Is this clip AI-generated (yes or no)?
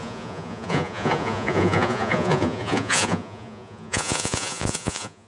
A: yes